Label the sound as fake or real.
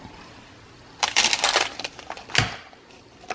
real